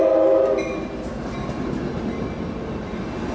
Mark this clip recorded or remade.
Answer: recorded